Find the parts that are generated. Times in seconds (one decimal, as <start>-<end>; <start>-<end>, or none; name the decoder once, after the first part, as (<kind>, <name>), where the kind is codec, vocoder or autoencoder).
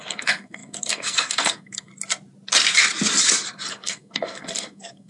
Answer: 0.0-1.9 (codec, SNAC); 3.7-5.1